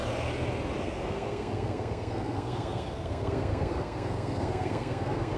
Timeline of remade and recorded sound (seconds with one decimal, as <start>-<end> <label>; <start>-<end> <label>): 0.0-0.8 recorded; 0.8-5.4 remade

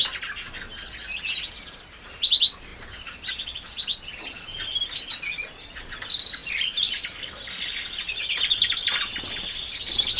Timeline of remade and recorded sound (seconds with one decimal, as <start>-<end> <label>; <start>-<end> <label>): 0.0-10.2 recorded

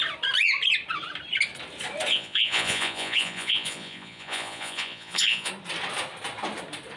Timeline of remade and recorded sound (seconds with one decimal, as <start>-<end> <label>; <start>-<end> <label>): 0.0-2.1 recorded; 2.1-5.5 remade; 5.5-7.0 recorded

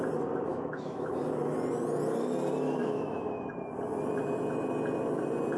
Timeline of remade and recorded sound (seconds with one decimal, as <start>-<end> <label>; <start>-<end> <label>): 0.0-0.5 recorded; 0.5-1.1 remade; 1.1-2.8 recorded; 2.8-3.5 remade; 3.5-5.6 recorded

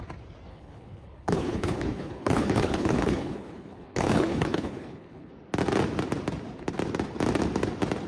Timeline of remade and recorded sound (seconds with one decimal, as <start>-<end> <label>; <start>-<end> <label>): 0.0-0.5 recorded; 0.5-5.3 remade; 5.3-8.1 recorded

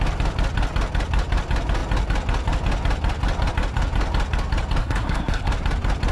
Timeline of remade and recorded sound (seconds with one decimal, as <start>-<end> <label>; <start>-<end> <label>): 0.0-4.8 recorded; 4.8-5.5 remade; 5.5-6.1 recorded

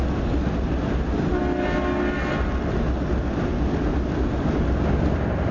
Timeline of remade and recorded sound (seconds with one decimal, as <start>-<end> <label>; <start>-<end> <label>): 0.0-5.5 recorded